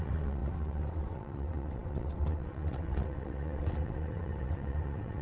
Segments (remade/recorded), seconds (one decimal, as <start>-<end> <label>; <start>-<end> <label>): 0.0-5.2 remade